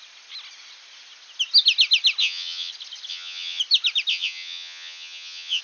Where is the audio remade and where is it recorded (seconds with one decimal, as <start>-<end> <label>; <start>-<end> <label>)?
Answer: 0.0-2.2 recorded; 2.2-2.7 remade; 2.7-3.1 recorded; 3.1-3.6 remade; 3.6-4.1 recorded; 4.1-5.6 remade